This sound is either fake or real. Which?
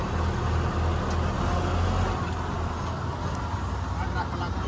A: real